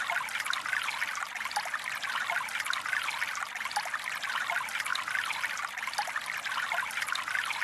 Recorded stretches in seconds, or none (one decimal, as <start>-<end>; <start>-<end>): 0.0-4.9